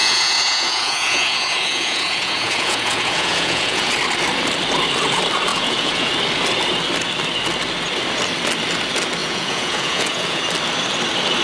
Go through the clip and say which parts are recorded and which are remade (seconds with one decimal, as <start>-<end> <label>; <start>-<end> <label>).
0.0-3.9 remade; 3.9-5.5 recorded; 5.5-6.1 remade; 6.1-9.2 recorded; 9.2-10.4 remade; 10.4-11.4 recorded